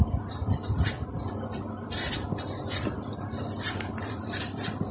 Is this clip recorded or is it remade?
remade